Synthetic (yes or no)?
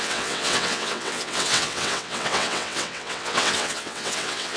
yes